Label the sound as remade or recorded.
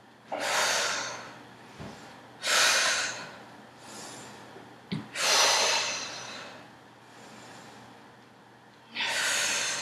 recorded